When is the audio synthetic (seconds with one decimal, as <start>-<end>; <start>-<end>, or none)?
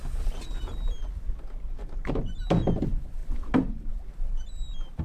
none